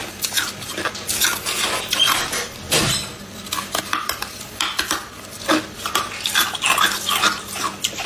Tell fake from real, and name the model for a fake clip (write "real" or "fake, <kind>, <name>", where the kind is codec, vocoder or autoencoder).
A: real